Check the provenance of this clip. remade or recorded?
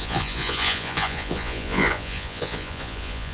remade